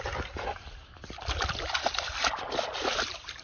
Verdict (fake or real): real